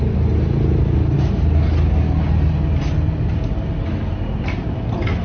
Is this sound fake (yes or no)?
no